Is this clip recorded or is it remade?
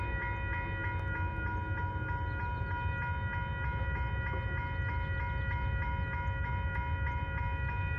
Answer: recorded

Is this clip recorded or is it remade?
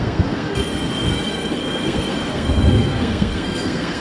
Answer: remade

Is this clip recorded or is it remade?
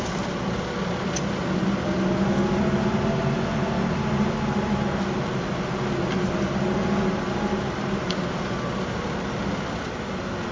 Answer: recorded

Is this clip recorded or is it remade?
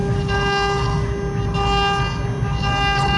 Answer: recorded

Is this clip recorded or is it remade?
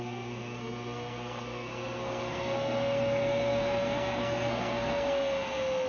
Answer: remade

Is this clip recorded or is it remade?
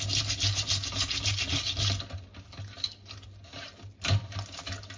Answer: recorded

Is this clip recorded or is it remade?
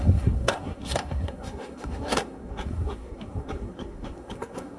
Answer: remade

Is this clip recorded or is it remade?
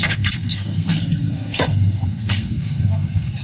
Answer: remade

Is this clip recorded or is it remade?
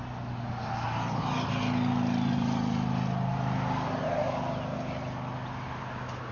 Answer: recorded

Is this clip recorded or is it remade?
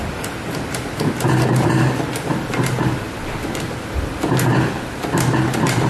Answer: recorded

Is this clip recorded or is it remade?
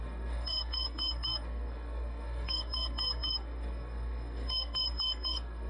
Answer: remade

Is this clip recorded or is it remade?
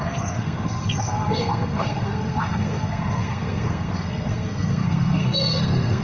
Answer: remade